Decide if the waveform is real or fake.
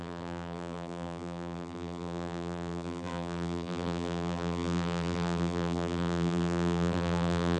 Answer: fake